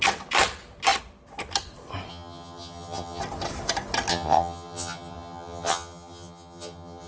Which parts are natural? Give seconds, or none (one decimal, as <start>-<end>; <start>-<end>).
0.0-2.1; 3.2-4.1